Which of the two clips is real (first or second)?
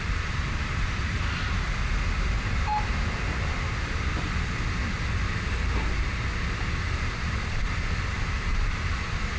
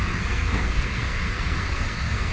first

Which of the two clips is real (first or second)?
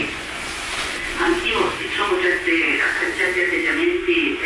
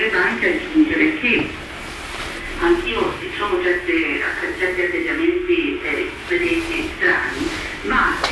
second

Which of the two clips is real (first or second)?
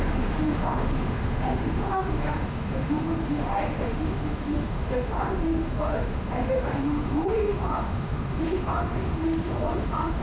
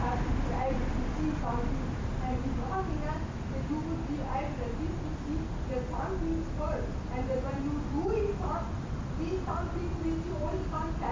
second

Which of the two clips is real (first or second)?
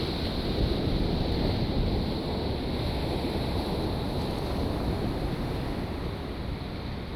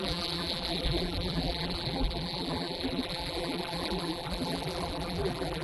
first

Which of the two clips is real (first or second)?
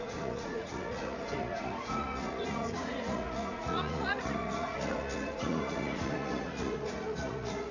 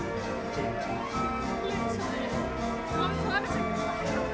second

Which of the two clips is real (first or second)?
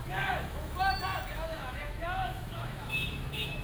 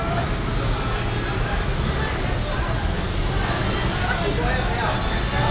second